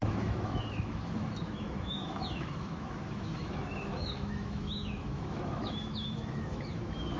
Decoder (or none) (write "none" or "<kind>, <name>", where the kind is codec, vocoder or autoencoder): autoencoder, DAC-VAE